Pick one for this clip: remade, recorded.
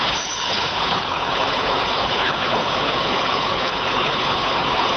remade